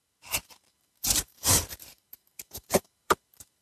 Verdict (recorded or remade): remade